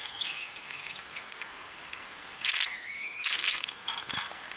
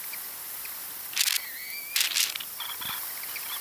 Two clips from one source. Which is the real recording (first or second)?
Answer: second